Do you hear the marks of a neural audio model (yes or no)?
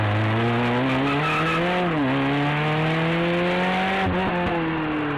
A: no